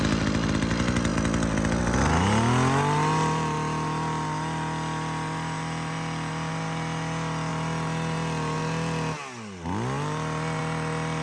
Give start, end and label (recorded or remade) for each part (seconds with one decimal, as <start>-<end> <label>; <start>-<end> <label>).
0.0-11.2 recorded